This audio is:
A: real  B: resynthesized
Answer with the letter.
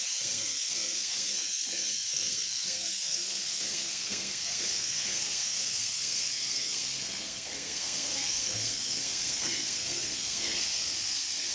B